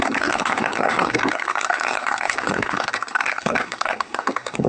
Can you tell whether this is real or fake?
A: fake